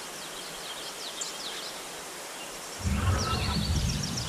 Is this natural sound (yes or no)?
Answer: yes